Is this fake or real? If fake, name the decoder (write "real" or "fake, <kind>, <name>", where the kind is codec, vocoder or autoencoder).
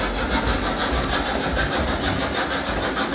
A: real